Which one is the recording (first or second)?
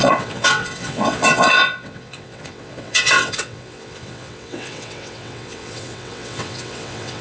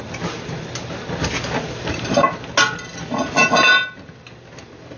second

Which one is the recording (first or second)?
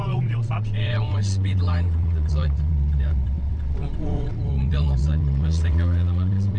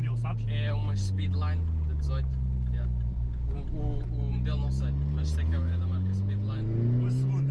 second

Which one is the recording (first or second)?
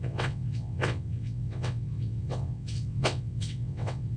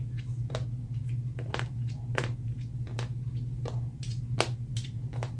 second